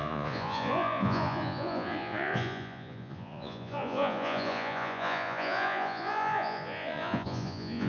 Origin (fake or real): fake